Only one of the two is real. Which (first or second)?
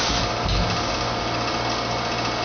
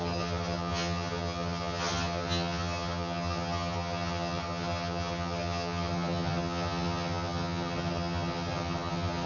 first